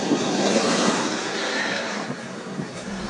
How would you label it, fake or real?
fake